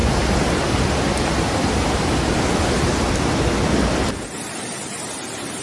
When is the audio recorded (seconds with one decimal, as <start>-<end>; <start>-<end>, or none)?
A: 0.0-5.6